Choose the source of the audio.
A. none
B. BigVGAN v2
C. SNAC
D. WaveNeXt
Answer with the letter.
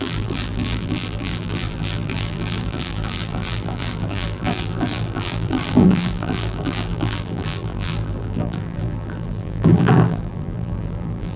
B